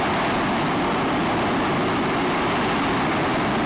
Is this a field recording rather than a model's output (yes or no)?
yes